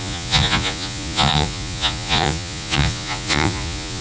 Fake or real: fake